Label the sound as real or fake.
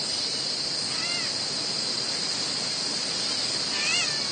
real